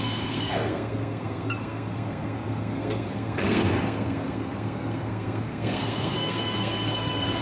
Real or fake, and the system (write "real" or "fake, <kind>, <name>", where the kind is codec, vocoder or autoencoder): fake, codec, SNAC